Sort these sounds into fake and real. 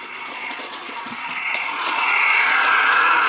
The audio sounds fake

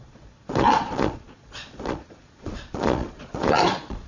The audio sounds fake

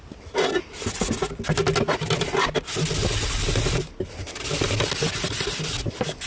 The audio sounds real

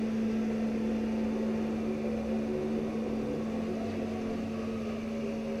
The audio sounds real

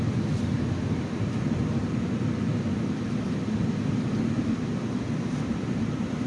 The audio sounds fake